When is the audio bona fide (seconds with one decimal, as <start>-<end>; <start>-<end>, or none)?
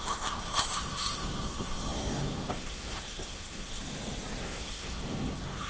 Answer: 3.8-4.4